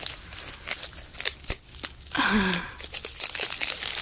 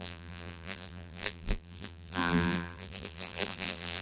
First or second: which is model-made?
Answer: second